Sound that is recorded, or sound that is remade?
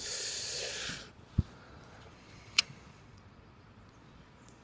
remade